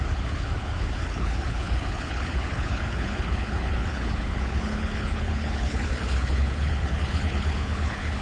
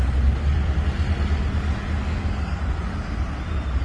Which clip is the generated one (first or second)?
first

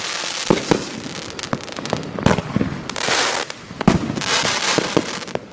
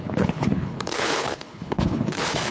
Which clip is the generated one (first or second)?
second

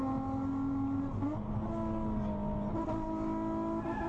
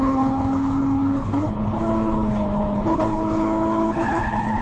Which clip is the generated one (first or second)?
second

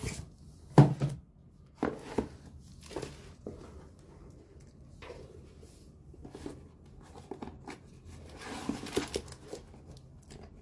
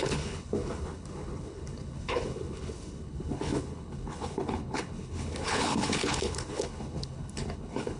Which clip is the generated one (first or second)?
second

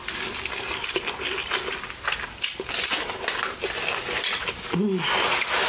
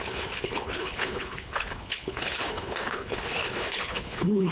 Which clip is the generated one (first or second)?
second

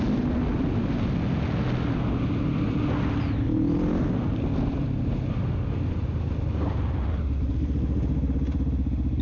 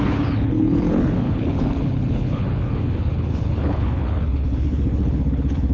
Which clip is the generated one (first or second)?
second